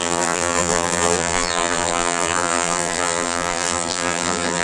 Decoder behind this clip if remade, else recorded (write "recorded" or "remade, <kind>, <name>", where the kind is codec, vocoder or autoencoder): remade, vocoder, BigVGAN v2